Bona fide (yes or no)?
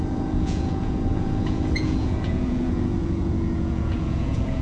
no